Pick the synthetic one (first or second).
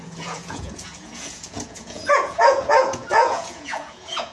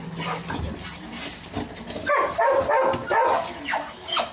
first